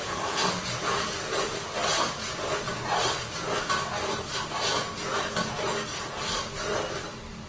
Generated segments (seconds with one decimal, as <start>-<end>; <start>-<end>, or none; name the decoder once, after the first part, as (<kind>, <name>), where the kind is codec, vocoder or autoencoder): 0.0-0.5 (codec, SNAC)